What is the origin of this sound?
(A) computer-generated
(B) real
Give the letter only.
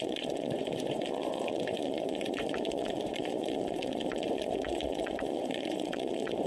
A